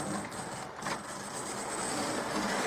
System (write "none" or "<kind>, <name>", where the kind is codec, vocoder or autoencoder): none